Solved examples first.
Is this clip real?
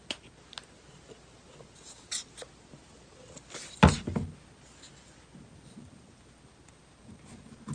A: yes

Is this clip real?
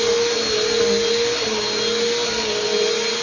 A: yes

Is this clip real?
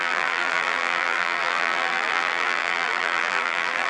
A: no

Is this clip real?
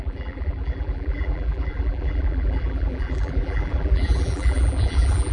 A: no